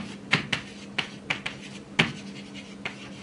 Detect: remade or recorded recorded